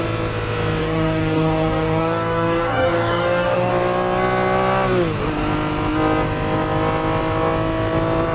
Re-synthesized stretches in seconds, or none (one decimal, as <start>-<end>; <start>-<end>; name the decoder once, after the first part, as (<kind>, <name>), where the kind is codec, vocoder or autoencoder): 0.8-3.7 (codec, DAC)